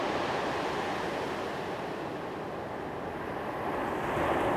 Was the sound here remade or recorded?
recorded